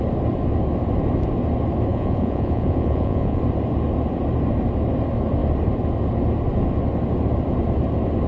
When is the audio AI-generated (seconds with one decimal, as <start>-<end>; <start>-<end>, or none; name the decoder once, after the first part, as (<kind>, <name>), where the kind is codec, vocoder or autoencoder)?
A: 1.9-3.4 (vocoder, Vocos)

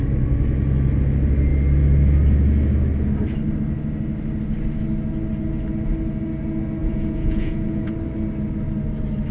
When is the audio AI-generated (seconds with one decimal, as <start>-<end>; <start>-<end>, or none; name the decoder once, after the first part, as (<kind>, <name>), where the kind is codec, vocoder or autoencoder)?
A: 6.8-7.9 (vocoder, Vocos)